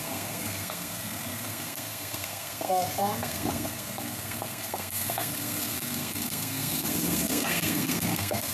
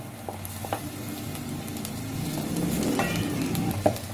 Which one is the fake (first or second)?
first